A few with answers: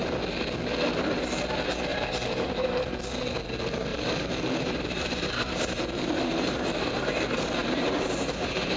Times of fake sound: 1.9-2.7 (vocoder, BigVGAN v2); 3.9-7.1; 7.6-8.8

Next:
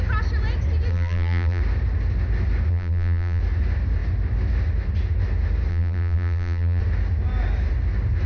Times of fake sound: 0.9-1.6 (vocoder, BigVGAN v2); 2.7-3.4; 5.7-6.8

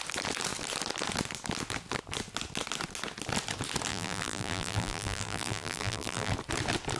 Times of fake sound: 3.9-6.3 (vocoder, BigVGAN v2)